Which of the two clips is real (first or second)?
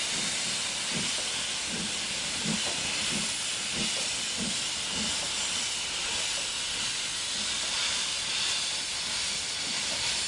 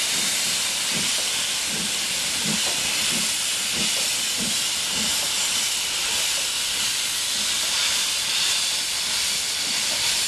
first